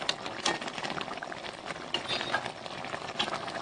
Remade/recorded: recorded